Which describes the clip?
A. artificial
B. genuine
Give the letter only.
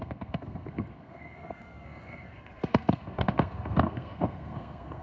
A